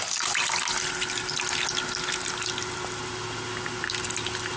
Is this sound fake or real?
real